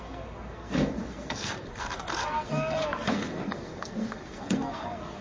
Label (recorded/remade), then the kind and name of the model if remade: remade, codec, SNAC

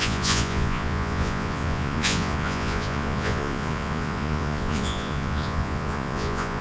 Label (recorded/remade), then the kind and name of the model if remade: remade, vocoder, Vocos